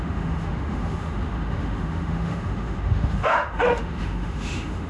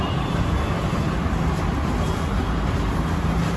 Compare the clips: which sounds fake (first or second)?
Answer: first